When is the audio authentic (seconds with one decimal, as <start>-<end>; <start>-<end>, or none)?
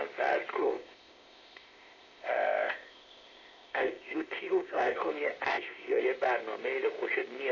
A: 0.0-0.6; 5.1-5.5; 6.0-7.5